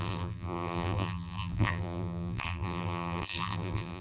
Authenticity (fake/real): fake